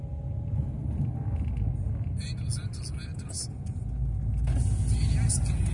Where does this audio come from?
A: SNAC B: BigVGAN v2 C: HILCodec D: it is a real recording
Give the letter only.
D